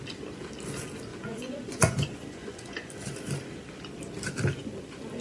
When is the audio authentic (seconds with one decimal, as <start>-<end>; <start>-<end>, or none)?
0.0-1.1; 2.9-5.2